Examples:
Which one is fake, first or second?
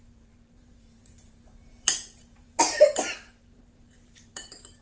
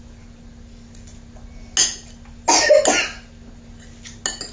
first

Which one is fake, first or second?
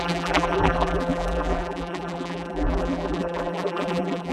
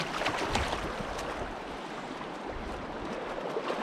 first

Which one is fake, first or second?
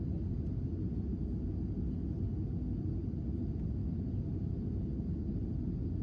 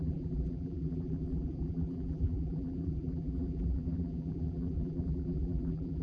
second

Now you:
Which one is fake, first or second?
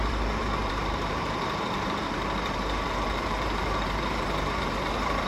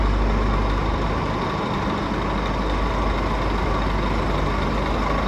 first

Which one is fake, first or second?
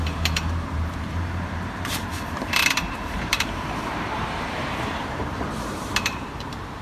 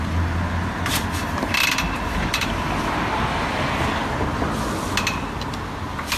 first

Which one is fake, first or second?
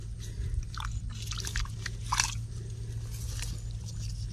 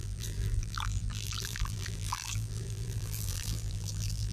second